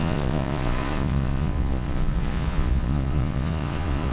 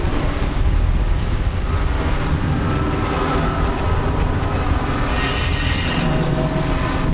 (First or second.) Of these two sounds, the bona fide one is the second